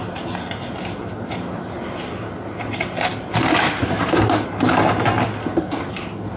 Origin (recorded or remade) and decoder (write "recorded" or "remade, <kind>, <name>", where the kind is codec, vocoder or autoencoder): recorded